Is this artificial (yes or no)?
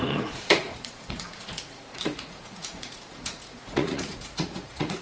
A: yes